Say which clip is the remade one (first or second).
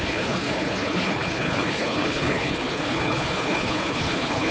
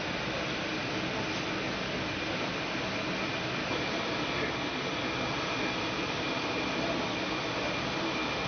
first